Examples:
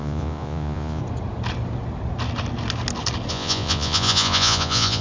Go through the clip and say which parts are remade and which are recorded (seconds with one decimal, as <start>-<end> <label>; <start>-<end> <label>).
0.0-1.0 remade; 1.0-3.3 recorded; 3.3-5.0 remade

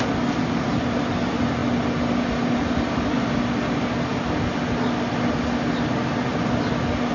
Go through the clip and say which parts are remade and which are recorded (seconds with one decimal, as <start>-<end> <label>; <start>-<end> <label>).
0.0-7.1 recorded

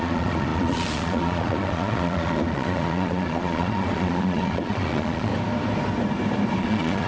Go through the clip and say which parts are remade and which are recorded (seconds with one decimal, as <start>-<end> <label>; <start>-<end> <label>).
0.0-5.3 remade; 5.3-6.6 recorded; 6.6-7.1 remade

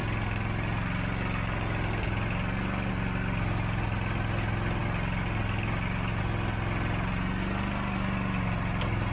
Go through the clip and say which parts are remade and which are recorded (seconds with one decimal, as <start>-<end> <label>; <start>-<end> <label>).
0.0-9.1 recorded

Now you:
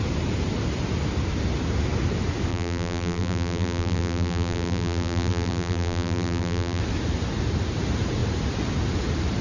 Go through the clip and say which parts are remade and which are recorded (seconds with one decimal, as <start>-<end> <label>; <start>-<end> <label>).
0.0-2.5 recorded; 2.5-6.8 remade; 6.8-9.4 recorded

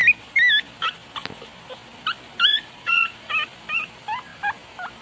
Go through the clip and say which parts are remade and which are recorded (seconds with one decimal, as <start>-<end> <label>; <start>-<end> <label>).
0.0-2.5 recorded; 2.5-3.3 remade; 3.3-5.0 recorded